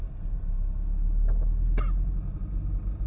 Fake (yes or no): no